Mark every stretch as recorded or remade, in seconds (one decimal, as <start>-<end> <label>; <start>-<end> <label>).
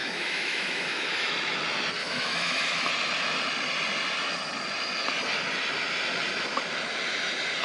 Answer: 0.0-1.3 remade; 1.3-2.0 recorded; 2.0-2.9 remade; 2.9-7.6 recorded